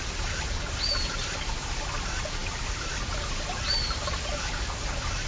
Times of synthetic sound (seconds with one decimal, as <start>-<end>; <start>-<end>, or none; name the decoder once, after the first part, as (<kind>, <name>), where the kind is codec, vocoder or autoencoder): none